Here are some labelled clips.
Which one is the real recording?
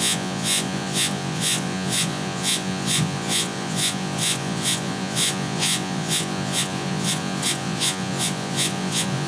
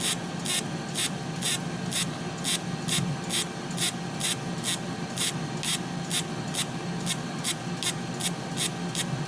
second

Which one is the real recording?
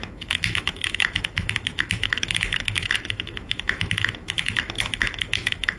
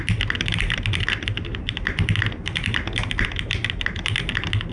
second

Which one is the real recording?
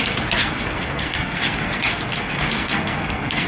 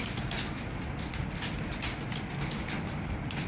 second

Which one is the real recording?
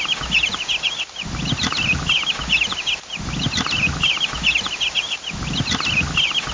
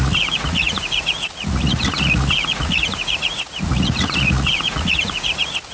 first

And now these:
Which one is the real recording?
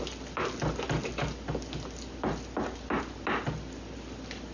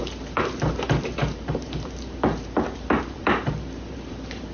first